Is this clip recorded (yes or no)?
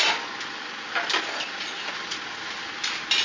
yes